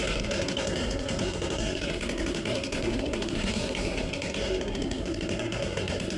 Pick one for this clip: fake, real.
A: fake